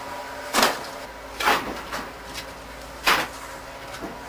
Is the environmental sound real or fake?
real